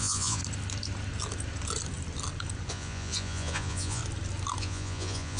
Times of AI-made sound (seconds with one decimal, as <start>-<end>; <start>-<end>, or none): 0.0-0.4; 2.7-4.0; 4.6-5.4